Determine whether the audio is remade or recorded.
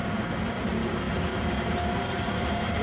recorded